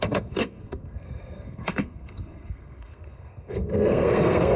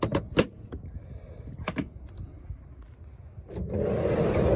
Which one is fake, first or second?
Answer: first